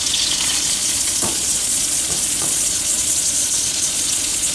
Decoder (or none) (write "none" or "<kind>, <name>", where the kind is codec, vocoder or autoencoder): vocoder, Vocos